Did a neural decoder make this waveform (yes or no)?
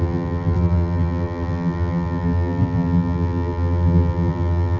yes